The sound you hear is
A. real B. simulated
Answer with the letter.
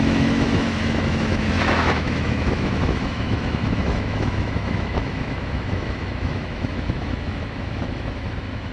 B